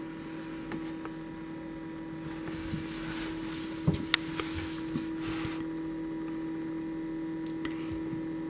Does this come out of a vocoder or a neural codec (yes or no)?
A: no